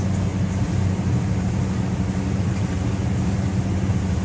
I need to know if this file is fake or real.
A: real